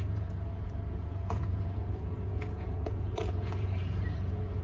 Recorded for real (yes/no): no